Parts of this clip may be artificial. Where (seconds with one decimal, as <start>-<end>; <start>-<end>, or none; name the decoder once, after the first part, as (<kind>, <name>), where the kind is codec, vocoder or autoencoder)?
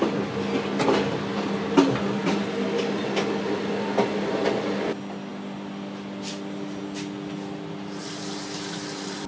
8.0-9.3 (vocoder, BigVGAN v2)